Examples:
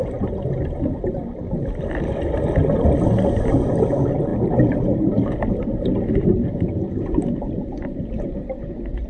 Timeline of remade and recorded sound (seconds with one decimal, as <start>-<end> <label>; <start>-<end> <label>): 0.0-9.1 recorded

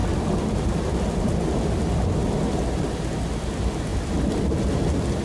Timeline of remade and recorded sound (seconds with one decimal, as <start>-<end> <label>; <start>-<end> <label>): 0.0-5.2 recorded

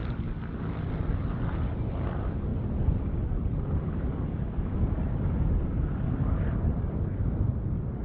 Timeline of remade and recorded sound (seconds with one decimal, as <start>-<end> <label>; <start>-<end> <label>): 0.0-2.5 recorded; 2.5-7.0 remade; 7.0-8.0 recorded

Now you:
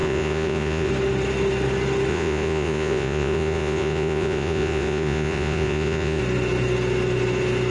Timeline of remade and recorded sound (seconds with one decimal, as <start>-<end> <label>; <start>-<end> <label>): 0.0-0.9 remade; 0.9-2.1 recorded; 2.1-6.2 remade; 6.2-7.7 recorded